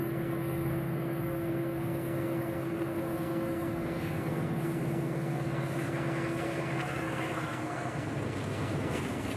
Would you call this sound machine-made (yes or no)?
yes